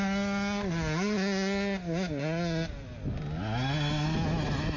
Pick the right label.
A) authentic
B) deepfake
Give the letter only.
A